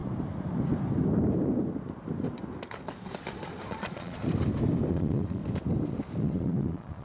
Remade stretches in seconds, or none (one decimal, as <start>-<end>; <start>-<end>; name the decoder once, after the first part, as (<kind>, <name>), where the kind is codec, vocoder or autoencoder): 3.7-4.2 (vocoder, Vocos); 4.9-5.4; 6.2-7.0

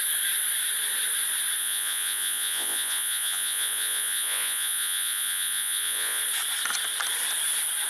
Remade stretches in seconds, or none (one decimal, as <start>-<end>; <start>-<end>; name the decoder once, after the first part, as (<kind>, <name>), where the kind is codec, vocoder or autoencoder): 1.6-6.2 (vocoder, Vocos)

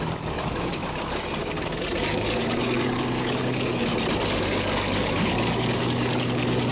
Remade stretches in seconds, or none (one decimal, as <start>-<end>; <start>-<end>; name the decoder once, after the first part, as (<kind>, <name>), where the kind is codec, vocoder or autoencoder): 0.0-0.8 (codec, DAC); 2.0-3.9; 4.4-6.7

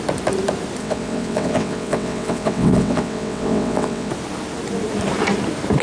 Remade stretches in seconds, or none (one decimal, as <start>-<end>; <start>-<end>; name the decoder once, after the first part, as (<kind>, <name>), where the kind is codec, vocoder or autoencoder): 0.8-4.1 (vocoder, WaveNeXt)